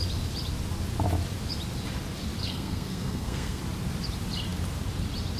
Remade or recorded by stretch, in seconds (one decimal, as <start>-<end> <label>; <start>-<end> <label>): 0.0-2.4 recorded; 2.4-3.6 remade; 3.6-5.4 recorded